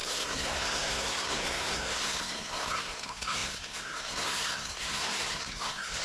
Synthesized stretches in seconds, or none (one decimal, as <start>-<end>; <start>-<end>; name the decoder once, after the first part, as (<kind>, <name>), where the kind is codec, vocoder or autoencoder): 0.0-6.0 (codec, SNAC)